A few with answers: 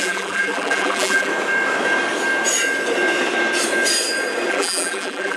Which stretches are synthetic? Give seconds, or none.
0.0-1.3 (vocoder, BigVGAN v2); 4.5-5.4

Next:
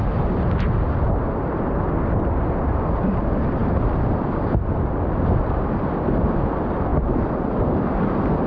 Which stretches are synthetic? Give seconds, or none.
none

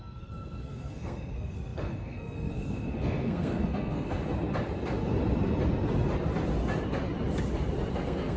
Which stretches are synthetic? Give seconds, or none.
0.0-4.2 (codec, SNAC); 7.9-8.4

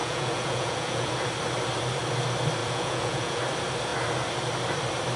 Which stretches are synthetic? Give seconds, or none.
0.0-1.1 (vocoder, Vocos); 2.6-3.4

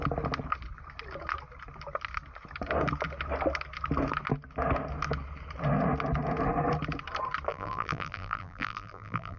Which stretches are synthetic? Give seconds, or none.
7.5-9.4 (vocoder, BigVGAN v2)

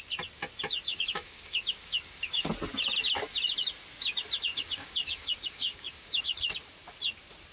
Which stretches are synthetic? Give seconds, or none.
0.9-2.5 (codec, DAC); 4.5-6.5

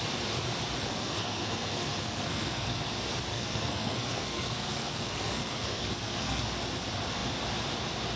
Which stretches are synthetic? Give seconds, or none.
0.8-2.9 (codec, SNAC); 3.3-6.4